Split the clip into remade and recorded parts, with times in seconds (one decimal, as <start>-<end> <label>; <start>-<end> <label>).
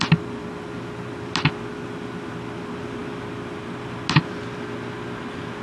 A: 0.0-5.6 recorded